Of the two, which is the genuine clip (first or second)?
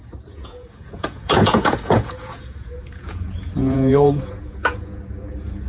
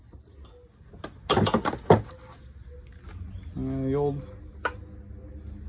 second